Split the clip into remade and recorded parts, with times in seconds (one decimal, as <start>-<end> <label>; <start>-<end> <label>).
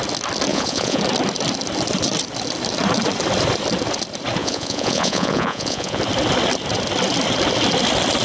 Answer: 0.0-0.5 recorded; 0.5-1.0 remade; 1.0-4.4 recorded; 4.4-6.0 remade; 6.0-8.2 recorded